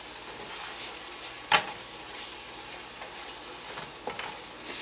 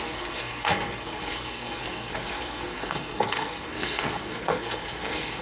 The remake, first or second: second